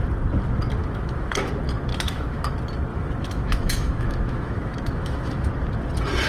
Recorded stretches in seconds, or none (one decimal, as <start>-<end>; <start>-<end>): 0.0-0.8; 1.5-1.9; 2.5-2.9; 5.5-6.3